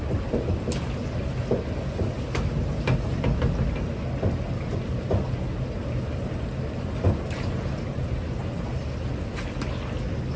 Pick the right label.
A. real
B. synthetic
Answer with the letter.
A